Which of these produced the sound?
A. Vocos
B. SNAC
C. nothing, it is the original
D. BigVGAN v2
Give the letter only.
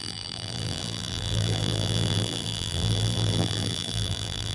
D